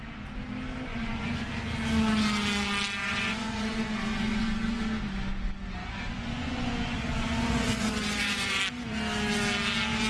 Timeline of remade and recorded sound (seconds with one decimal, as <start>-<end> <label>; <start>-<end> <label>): 0.0-0.9 recorded; 0.9-1.5 remade; 1.5-3.0 recorded; 3.0-4.8 remade; 4.8-5.8 recorded; 5.8-8.6 remade; 8.6-10.1 recorded